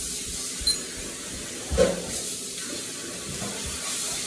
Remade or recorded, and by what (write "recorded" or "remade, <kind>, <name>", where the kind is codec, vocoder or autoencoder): recorded